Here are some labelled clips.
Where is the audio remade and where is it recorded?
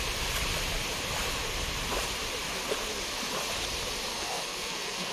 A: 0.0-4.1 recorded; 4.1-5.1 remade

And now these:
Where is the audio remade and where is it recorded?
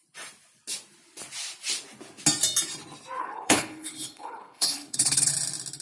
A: 0.0-3.2 recorded; 3.2-5.3 remade; 5.3-5.8 recorded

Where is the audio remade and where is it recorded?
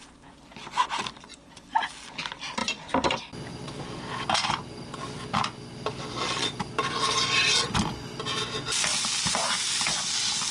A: 0.0-2.6 recorded; 2.6-3.2 remade; 3.2-5.6 recorded; 5.6-6.7 remade; 6.7-10.5 recorded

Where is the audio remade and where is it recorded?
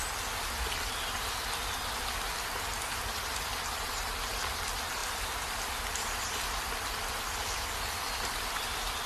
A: 0.0-5.0 recorded; 5.0-8.6 remade; 8.6-9.1 recorded